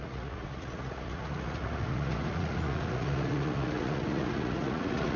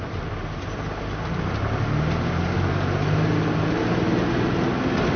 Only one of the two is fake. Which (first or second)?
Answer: first